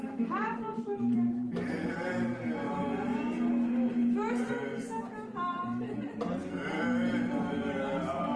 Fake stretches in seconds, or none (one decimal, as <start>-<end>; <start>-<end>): 0.0-3.1; 4.3-4.7; 5.6-8.4